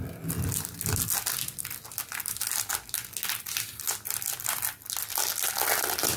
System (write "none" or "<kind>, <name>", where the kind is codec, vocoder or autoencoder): none